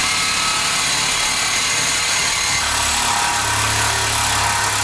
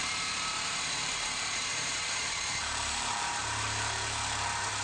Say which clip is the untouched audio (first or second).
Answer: first